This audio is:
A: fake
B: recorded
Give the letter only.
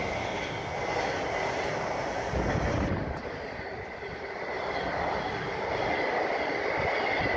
B